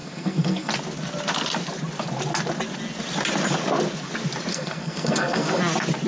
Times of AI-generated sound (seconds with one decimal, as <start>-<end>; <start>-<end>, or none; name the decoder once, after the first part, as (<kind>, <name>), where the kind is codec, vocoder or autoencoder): 0.0-0.7 (codec, SNAC); 4.5-5.6